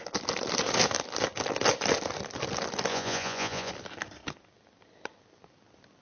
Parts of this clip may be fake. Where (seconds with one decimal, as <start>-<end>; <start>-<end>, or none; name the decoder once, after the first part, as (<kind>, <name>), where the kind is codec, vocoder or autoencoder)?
2.9-3.7 (vocoder, Vocos)